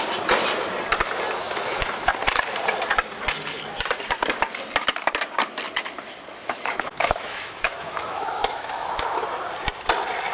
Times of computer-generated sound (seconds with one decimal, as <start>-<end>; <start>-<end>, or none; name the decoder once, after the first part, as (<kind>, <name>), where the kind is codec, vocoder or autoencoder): 1.4-1.9 (autoencoder, DAC-VAE); 6.4-9.0